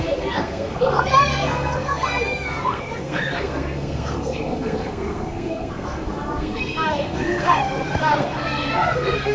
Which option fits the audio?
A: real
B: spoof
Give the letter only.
B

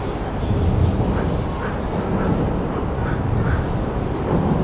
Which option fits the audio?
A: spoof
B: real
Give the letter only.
B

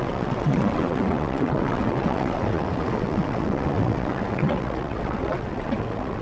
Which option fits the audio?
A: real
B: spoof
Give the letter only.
B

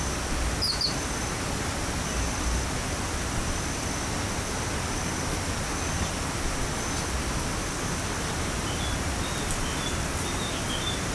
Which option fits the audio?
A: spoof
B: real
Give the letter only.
B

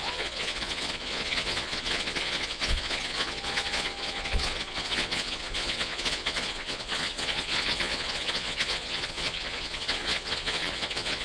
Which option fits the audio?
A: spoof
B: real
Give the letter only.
A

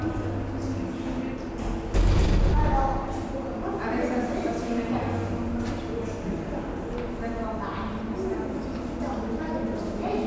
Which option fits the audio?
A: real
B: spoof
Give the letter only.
A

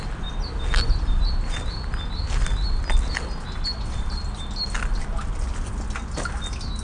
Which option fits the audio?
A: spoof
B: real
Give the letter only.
B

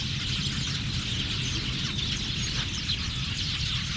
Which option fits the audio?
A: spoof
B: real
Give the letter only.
B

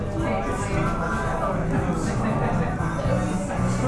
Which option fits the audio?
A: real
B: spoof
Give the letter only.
A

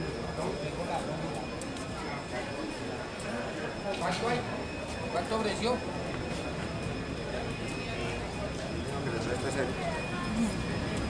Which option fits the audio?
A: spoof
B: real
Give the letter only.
B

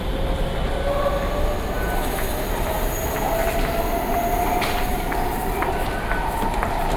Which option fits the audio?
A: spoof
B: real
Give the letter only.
B